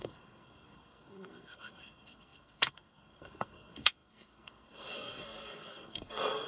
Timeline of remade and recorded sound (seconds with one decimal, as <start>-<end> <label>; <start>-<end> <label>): 0.0-6.5 remade